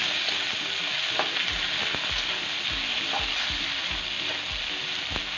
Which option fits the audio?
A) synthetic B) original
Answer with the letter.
B